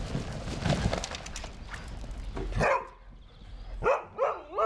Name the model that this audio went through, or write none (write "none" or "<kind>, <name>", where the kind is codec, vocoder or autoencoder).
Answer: none